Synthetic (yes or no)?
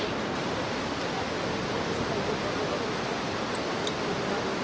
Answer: no